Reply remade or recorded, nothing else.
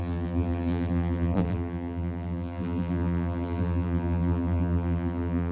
remade